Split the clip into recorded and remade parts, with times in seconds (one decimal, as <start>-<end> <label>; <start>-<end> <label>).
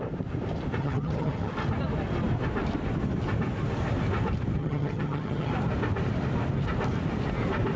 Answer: 0.0-0.8 recorded; 0.8-1.5 remade; 1.5-4.6 recorded; 4.6-5.5 remade; 5.5-7.8 recorded